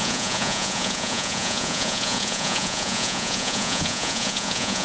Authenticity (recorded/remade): remade